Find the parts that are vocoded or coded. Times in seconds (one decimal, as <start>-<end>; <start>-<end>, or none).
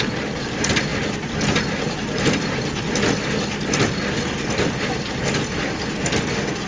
none